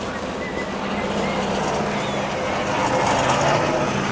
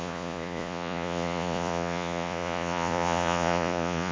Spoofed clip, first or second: second